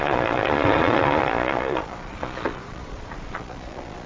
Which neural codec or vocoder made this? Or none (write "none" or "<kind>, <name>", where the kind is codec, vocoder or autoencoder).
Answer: vocoder, Vocos